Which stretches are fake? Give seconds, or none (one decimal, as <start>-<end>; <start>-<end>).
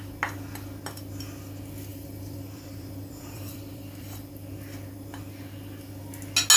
1.9-4.3